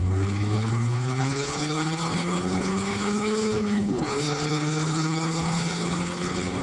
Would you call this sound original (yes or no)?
no